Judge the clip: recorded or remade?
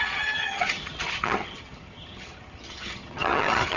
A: remade